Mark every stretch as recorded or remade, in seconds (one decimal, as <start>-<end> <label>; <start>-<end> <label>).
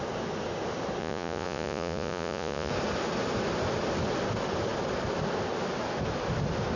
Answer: 0.0-1.0 recorded; 1.0-2.7 remade; 2.7-6.8 recorded